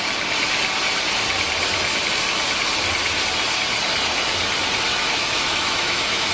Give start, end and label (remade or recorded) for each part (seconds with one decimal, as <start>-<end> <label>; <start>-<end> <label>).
0.0-4.9 recorded; 4.9-6.3 remade